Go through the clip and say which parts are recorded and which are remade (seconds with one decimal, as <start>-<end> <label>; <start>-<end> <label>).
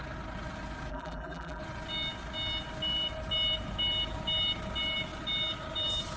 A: 0.0-0.9 recorded; 0.9-1.6 remade; 1.6-6.2 recorded